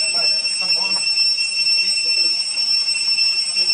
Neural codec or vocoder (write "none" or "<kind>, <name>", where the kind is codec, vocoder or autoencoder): none